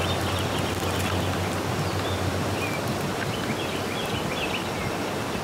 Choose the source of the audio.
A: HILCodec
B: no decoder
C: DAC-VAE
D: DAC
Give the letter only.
B